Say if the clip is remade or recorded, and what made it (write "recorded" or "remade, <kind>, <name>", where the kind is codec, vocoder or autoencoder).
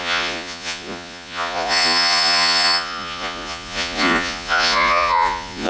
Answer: remade, vocoder, Vocos